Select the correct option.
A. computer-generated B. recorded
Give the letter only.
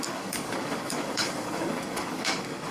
A